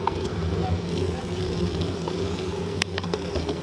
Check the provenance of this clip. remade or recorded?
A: remade